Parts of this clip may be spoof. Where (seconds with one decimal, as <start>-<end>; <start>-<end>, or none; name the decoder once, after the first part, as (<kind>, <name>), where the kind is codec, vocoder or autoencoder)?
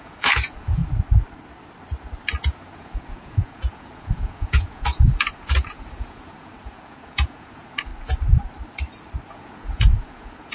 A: 0.0-0.8 (vocoder, Vocos); 2.4-7.9; 9.3-10.5